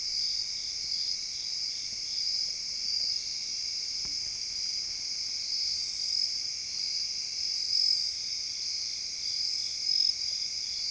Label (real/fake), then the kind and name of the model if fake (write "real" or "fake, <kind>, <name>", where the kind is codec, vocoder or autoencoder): real